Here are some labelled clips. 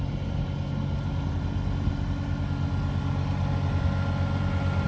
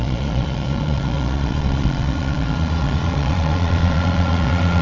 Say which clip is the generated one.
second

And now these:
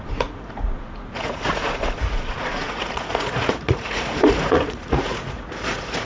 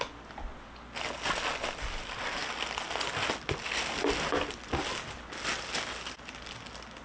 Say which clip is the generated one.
first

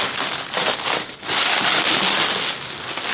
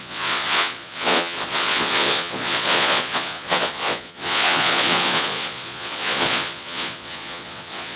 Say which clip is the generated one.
second